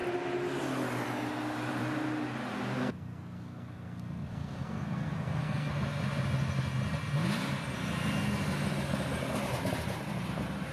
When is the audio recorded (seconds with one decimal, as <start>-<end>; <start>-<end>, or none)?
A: 0.0-2.8; 5.7-10.7

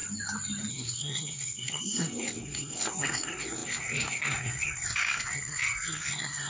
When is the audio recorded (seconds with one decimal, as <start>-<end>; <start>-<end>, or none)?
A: 0.0-0.7

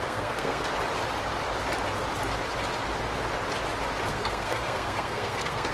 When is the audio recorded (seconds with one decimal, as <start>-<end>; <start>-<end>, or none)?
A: 0.7-4.1

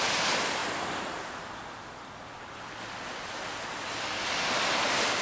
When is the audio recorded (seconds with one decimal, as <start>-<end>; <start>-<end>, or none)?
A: 0.0-5.2

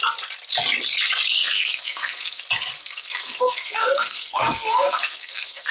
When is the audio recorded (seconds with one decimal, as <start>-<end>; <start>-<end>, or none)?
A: 0.0-1.4; 2.4-2.8